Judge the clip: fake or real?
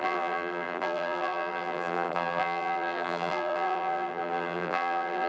fake